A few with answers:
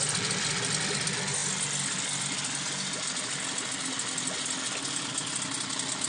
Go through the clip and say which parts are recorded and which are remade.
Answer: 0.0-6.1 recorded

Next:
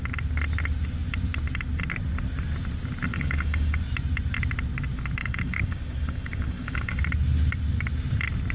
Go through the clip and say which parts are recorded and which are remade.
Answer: 0.0-3.1 recorded; 3.1-3.8 remade; 3.8-5.2 recorded; 5.2-7.0 remade; 7.0-8.5 recorded

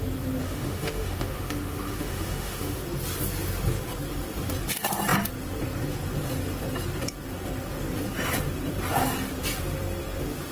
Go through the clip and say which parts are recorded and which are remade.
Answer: 0.0-0.4 recorded; 0.4-2.8 remade; 2.8-10.5 recorded

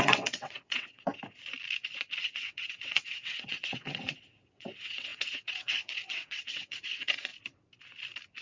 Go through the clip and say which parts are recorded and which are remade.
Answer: 0.0-1.1 remade; 1.1-2.2 recorded; 2.2-7.3 remade; 7.3-8.4 recorded

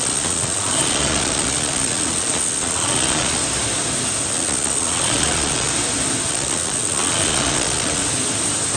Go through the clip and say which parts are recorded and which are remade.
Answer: 0.0-3.4 remade; 3.4-4.3 recorded; 4.3-5.7 remade; 5.7-6.3 recorded; 6.3-8.0 remade; 8.0-8.8 recorded

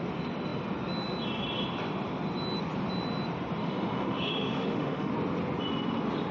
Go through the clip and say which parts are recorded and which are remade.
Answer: 0.0-3.6 recorded; 3.6-5.1 remade; 5.1-6.3 recorded